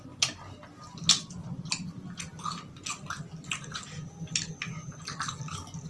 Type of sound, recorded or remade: recorded